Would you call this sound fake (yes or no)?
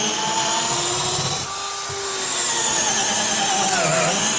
no